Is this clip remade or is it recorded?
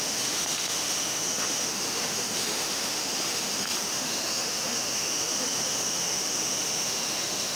remade